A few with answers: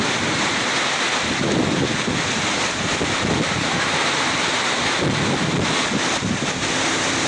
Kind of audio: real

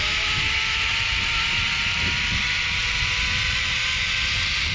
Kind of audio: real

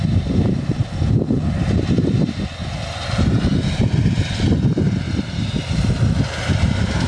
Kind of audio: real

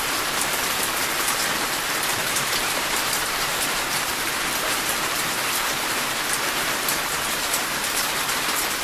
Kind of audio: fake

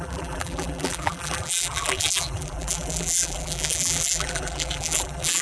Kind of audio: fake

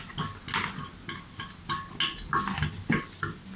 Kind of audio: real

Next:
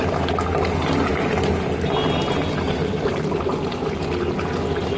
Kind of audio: real